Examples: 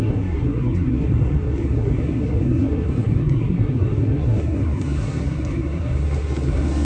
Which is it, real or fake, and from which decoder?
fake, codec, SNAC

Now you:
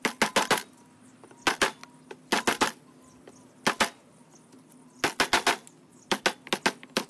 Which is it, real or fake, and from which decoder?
real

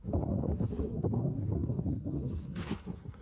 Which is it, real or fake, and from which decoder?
fake, codec, SNAC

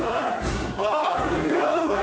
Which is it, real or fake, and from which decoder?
fake, codec, SNAC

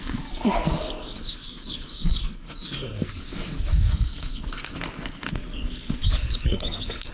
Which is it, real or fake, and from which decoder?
fake, codec, SNAC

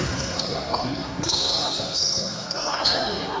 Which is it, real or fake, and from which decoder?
fake, codec, SNAC